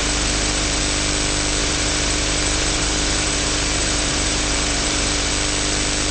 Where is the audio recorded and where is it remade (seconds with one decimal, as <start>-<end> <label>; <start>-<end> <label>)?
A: 0.0-0.8 remade; 0.8-1.6 recorded; 1.6-5.3 remade; 5.3-6.1 recorded

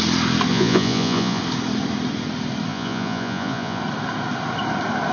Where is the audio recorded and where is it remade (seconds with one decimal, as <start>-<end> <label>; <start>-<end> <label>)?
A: 0.0-0.5 recorded; 0.5-1.4 remade; 1.4-2.7 recorded; 2.7-3.8 remade; 3.8-5.1 recorded

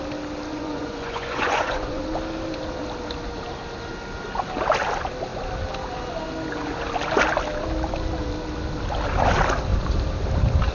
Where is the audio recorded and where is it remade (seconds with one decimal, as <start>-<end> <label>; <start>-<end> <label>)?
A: 0.0-0.5 recorded; 0.5-2.0 remade; 2.0-10.7 recorded

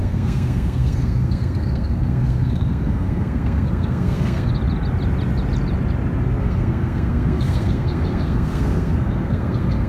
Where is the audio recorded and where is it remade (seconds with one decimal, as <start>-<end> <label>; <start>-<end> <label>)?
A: 0.0-4.5 remade; 4.5-6.4 recorded; 6.4-9.9 remade

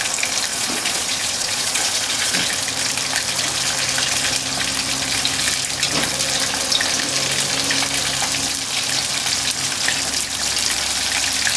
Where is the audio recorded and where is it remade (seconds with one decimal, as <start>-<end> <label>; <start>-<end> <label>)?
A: 0.0-0.5 recorded; 0.5-2.5 remade; 2.5-11.6 recorded

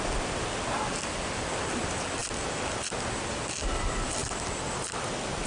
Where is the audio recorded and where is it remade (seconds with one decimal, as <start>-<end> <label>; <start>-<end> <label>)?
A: 0.0-5.5 recorded

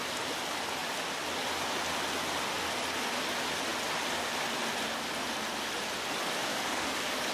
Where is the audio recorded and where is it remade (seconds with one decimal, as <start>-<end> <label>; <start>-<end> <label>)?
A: 0.0-6.5 recorded; 6.5-7.3 remade